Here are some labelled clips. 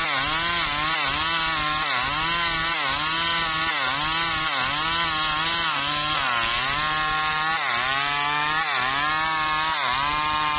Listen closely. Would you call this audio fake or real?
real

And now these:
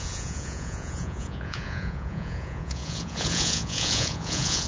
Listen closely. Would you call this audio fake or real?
fake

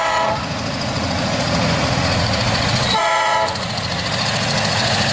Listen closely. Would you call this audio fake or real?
fake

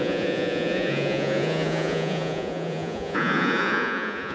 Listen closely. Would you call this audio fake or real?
fake